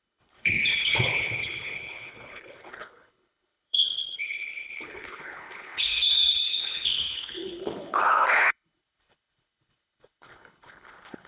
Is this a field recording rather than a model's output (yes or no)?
no